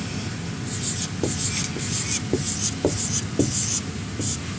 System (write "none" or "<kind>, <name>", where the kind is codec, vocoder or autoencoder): none